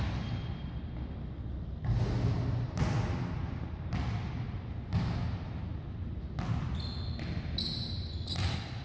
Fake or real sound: real